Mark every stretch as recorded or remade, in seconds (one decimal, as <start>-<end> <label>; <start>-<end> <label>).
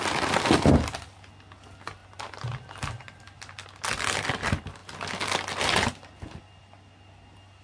0.0-7.6 recorded